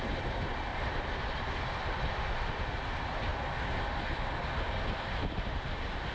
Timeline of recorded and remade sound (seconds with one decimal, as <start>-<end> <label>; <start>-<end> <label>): 0.0-0.7 recorded; 0.7-2.5 remade; 2.5-6.1 recorded